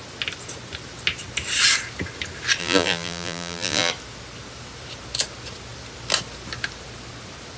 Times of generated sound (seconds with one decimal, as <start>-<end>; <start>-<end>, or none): 2.6-3.9